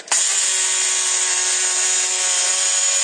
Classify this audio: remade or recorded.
recorded